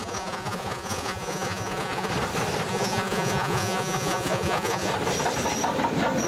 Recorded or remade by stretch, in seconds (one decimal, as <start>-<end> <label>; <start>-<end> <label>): 0.0-2.1 remade; 2.1-2.7 recorded; 2.7-4.9 remade; 4.9-6.3 recorded